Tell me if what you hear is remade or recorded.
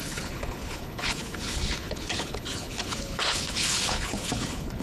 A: remade